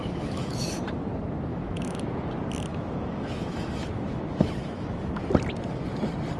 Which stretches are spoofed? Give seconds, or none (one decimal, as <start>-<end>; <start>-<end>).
0.0-0.8; 1.5-2.1; 2.7-5.2